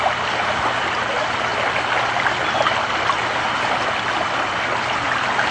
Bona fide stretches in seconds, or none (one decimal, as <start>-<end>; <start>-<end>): 0.0-5.5